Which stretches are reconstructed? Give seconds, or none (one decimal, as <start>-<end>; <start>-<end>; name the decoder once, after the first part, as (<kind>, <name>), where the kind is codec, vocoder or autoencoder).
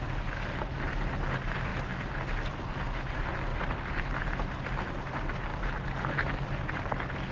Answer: none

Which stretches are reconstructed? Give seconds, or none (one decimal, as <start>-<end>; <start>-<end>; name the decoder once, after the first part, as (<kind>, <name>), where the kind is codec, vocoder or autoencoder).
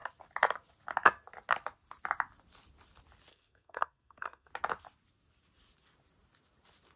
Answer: 3.3-4.5 (codec, SNAC)